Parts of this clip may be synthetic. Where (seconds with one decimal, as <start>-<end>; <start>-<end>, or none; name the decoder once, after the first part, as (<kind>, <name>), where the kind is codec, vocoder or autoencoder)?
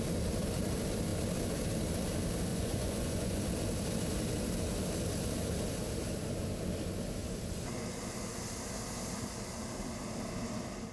2.5-3.4 (vocoder, Vocos)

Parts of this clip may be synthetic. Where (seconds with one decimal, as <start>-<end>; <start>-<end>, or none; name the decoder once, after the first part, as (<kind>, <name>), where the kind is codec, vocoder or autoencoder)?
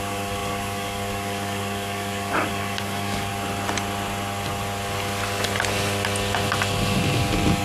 0.0-3.3 (codec, DAC)